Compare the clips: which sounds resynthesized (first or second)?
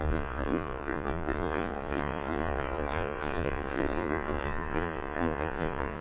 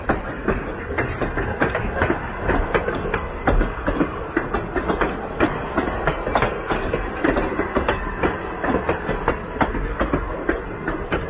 first